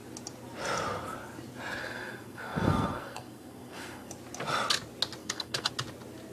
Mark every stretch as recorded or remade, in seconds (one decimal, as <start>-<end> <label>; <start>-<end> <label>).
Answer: 0.0-1.8 recorded; 1.8-4.1 remade; 4.1-5.2 recorded; 5.2-5.7 remade; 5.7-6.3 recorded